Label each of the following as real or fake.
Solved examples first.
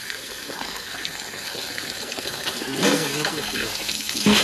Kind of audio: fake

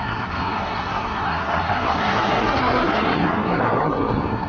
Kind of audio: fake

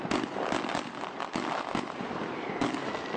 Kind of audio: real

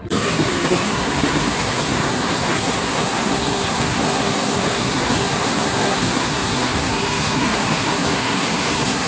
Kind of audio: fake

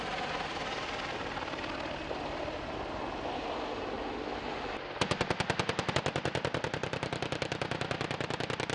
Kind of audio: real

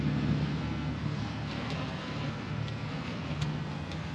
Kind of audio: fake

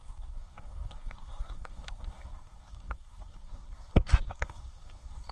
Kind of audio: fake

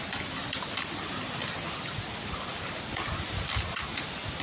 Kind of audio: real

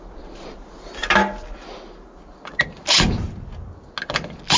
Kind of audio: real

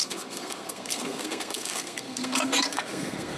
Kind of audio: fake